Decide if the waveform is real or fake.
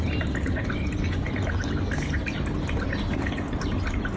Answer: real